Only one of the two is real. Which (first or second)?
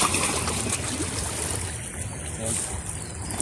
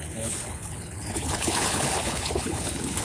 first